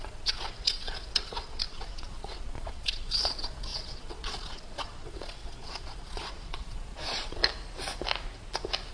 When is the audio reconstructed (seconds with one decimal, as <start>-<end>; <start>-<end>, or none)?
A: 0.0-7.4